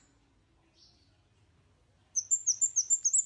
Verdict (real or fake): real